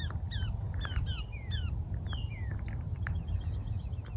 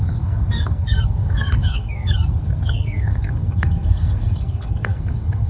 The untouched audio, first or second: first